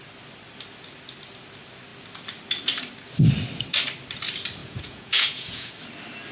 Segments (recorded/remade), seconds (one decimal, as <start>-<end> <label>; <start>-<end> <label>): 0.0-4.6 recorded; 4.6-5.7 remade; 5.7-6.3 recorded